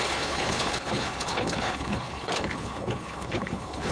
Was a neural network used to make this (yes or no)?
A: yes